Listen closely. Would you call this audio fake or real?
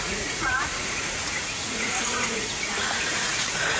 fake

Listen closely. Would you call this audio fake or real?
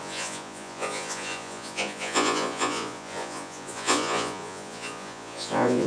fake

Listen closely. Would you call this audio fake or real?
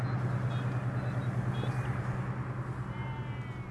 real